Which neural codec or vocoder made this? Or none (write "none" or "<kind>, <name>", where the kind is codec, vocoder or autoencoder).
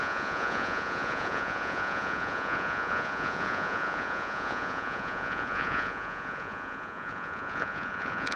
vocoder, Vocos